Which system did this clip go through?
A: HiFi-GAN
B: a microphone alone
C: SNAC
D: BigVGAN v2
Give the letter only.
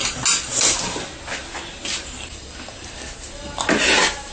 B